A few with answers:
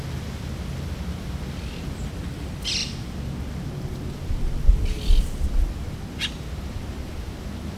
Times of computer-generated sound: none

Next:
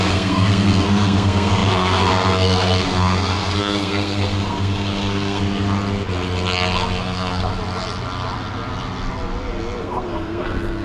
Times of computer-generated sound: 0.0-5.4; 7.0-7.5; 9.8-10.8

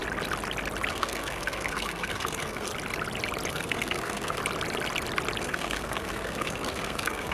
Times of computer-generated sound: 0.9-2.7; 3.5-4.4; 5.4-7.3

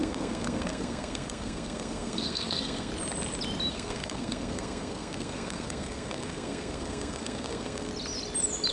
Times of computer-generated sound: 0.0-2.9; 3.7-7.9

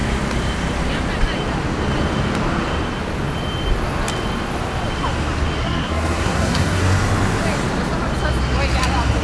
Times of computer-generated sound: 5.6-6.8

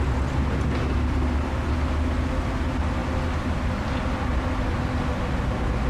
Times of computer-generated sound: none